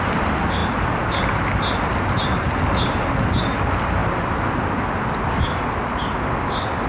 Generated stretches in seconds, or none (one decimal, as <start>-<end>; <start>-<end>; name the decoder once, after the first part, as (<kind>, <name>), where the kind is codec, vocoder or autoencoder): none